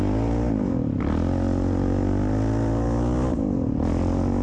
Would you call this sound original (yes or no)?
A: yes